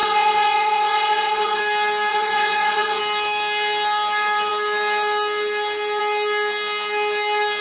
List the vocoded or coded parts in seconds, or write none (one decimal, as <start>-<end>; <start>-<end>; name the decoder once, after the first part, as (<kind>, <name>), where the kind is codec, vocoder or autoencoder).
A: 0.0-1.6 (vocoder, Vocos); 2.1-3.0